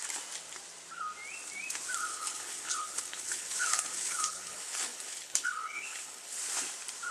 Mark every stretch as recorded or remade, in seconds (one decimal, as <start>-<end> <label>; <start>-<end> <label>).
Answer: 0.0-2.1 recorded; 2.1-6.4 remade; 6.4-7.1 recorded